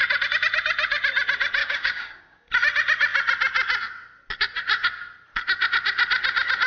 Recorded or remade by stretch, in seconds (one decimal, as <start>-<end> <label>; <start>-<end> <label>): 0.0-1.6 recorded; 1.6-2.5 remade; 2.5-6.7 recorded